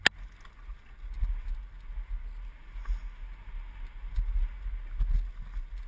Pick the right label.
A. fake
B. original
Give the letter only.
B